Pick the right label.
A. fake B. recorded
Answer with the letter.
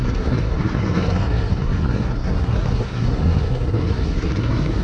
A